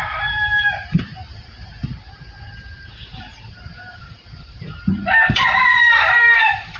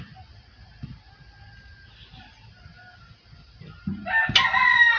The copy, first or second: first